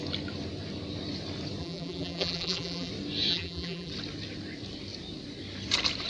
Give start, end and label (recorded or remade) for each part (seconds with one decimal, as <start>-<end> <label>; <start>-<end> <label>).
0.0-1.6 recorded; 1.6-2.9 remade; 2.9-3.3 recorded; 3.3-3.9 remade; 3.9-6.1 recorded